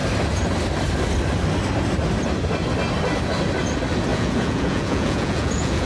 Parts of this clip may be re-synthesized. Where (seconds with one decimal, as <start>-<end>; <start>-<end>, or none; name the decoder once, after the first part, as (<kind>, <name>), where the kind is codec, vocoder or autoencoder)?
4.1-5.9 (vocoder, Vocos)